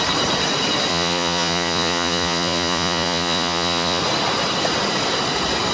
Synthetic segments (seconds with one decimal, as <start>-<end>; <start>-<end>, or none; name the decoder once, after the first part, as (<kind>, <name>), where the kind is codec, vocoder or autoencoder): 0.9-4.0 (vocoder, Vocos)